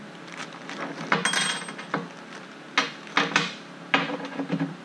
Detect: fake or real real